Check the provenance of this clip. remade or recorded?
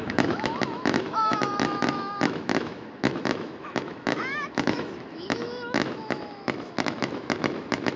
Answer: remade